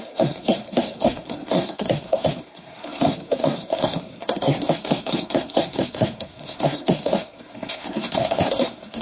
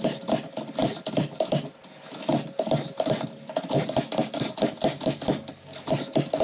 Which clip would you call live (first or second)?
second